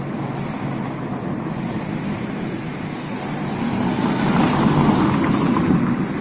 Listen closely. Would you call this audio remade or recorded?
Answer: recorded